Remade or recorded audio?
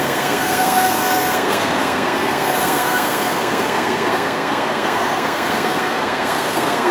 remade